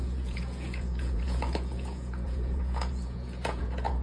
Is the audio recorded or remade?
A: remade